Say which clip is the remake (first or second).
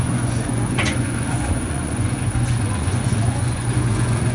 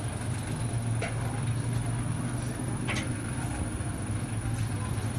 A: first